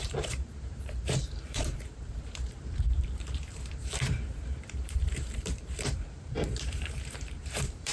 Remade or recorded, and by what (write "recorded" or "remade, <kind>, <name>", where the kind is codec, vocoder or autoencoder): remade, vocoder, BigVGAN v2